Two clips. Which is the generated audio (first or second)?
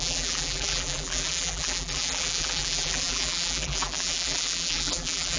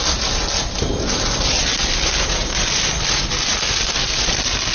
first